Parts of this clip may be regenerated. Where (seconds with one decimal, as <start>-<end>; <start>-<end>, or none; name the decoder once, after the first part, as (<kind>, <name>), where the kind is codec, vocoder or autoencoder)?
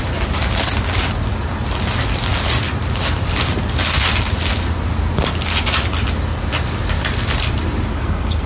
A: 7.9-8.5 (codec, SNAC)